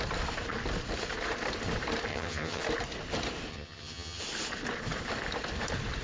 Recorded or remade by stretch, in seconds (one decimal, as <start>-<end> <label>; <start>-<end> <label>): 0.0-2.1 recorded; 2.1-2.6 remade; 2.6-3.5 recorded; 3.5-4.2 remade; 4.2-6.0 recorded

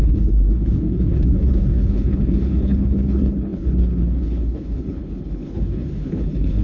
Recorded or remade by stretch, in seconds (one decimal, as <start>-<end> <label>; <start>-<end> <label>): 0.0-6.6 remade

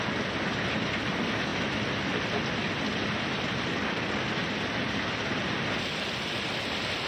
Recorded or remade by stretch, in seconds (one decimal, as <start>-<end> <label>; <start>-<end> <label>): 0.0-7.1 recorded

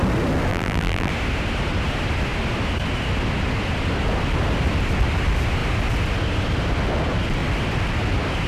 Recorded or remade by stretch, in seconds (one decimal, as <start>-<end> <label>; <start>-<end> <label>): 0.0-0.5 recorded; 0.5-1.1 remade; 1.1-8.5 recorded

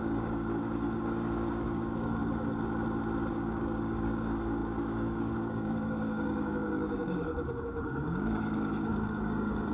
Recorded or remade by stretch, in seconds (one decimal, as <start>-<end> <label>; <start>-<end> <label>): 0.0-2.2 remade; 2.2-3.3 recorded; 3.3-9.7 remade

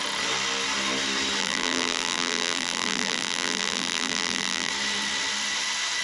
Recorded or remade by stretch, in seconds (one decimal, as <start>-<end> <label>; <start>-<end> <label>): 0.0-1.4 recorded; 1.4-4.7 remade; 4.7-6.0 recorded

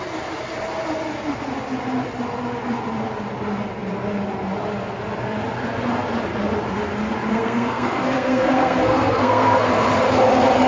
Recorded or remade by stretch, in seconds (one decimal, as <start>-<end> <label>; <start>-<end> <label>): 0.0-7.3 recorded; 7.3-9.7 remade; 9.7-10.7 recorded